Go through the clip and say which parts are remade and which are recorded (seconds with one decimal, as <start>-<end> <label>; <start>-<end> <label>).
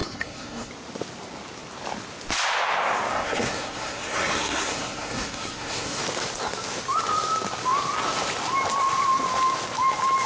0.0-0.7 remade; 0.7-3.1 recorded; 3.1-6.0 remade; 6.0-10.3 recorded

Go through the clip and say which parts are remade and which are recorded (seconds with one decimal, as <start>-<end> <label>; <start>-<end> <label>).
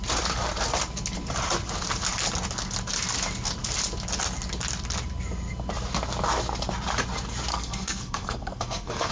0.0-7.5 recorded; 7.5-9.1 remade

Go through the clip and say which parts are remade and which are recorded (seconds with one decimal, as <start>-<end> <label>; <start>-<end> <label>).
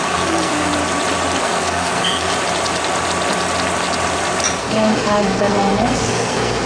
0.0-0.7 remade; 0.7-1.4 recorded; 1.4-2.3 remade; 2.3-4.6 recorded; 4.6-6.7 remade